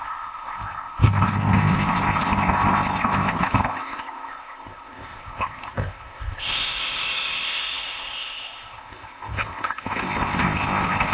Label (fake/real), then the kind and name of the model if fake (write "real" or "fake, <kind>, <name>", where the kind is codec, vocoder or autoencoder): fake, codec, ZipCodec